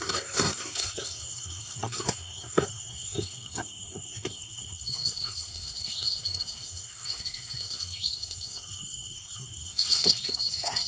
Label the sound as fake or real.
fake